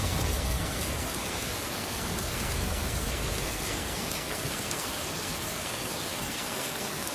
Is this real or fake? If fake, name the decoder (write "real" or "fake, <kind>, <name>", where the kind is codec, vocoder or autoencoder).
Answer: fake, codec, SNAC